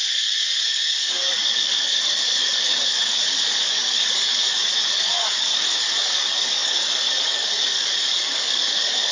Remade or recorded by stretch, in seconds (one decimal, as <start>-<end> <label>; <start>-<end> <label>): 0.0-9.1 remade